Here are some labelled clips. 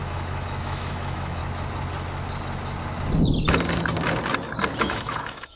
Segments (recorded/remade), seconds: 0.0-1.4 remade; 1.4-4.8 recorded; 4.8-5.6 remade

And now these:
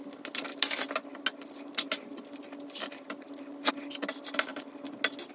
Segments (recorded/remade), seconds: 0.0-5.3 recorded